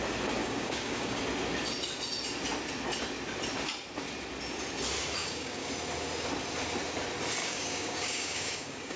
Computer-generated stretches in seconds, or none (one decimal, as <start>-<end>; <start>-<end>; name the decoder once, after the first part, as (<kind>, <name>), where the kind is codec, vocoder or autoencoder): 0.4-1.2 (codec, DAC); 5.2-5.7; 7.4-9.0